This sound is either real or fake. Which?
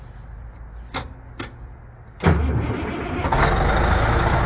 real